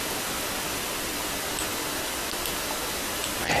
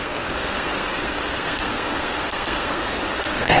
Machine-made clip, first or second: second